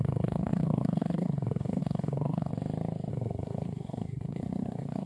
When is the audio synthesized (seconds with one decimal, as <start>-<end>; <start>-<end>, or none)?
0.0-2.5; 3.1-5.1